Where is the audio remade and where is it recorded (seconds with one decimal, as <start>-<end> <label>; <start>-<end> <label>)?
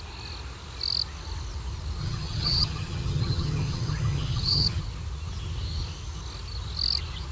0.0-2.0 recorded; 2.0-4.8 remade; 4.8-7.3 recorded